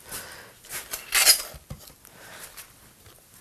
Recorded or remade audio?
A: recorded